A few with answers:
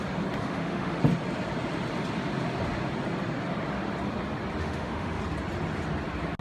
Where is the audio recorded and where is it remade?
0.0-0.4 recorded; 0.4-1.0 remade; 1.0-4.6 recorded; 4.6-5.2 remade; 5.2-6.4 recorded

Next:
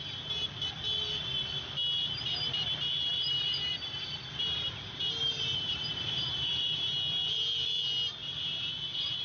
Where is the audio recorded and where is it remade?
0.0-3.1 recorded; 3.1-6.9 remade; 6.9-8.2 recorded; 8.2-8.7 remade; 8.7-9.2 recorded

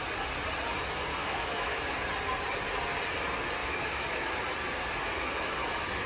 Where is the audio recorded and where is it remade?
0.0-1.2 recorded; 1.2-1.9 remade; 1.9-3.6 recorded; 3.6-4.3 remade; 4.3-6.1 recorded

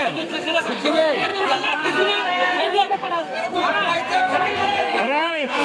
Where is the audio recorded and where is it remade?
0.0-3.6 remade; 3.6-4.2 recorded; 4.2-5.6 remade

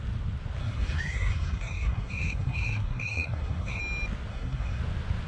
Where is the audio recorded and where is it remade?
0.0-0.6 recorded; 0.6-3.8 remade; 3.8-4.3 recorded; 4.3-4.8 remade; 4.8-5.3 recorded

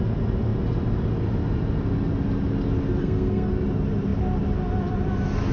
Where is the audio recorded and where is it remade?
0.0-3.0 recorded; 3.0-3.5 remade; 3.5-5.5 recorded

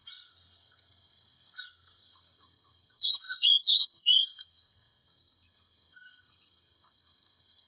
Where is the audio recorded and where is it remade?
0.0-7.7 remade